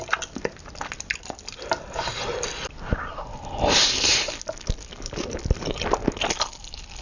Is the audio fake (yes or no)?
no